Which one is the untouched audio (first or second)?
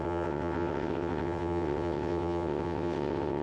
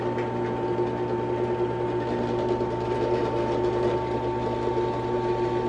second